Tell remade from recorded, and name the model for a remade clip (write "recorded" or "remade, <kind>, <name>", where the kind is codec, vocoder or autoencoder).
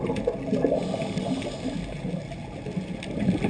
recorded